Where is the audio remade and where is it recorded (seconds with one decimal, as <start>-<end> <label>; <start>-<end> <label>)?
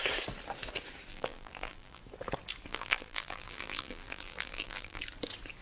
0.0-1.1 recorded; 1.1-2.0 remade; 2.0-2.7 recorded; 2.7-5.0 remade; 5.0-5.6 recorded